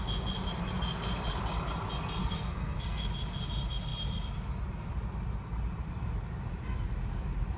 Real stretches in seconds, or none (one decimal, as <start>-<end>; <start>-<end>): 0.0-2.2; 3.0-7.6